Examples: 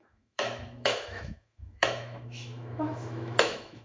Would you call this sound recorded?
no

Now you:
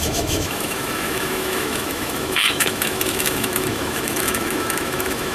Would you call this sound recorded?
no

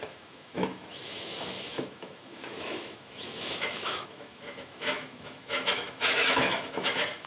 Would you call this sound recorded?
no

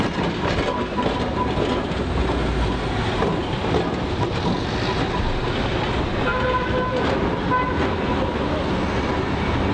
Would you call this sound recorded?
yes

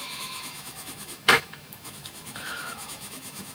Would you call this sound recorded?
no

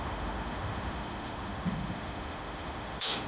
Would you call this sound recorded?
no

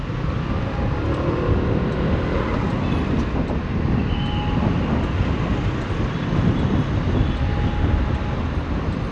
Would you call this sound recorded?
yes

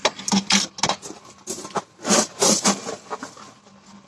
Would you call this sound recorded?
yes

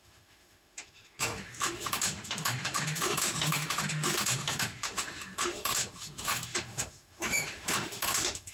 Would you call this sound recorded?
no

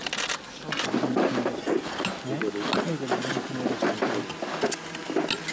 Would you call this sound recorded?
yes